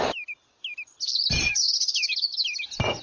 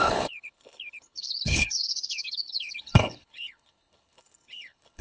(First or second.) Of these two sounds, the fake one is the second